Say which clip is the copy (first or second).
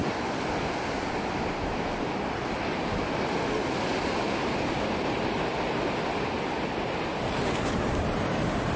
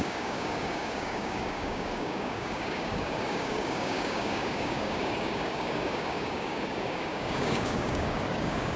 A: second